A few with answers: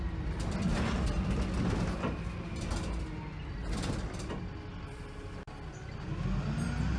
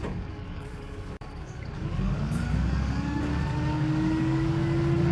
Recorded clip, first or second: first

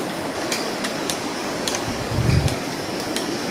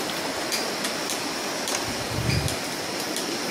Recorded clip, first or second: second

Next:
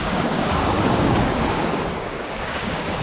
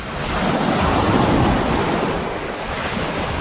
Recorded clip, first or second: second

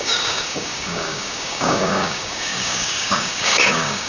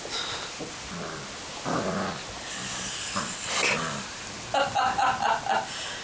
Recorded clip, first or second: second